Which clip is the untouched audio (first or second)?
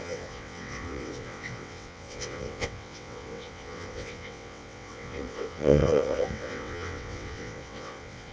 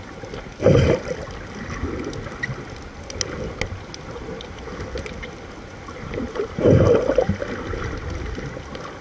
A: second